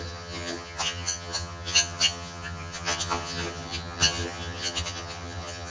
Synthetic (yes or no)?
yes